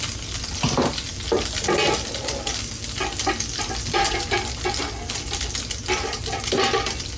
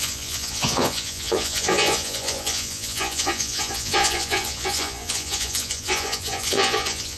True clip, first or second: first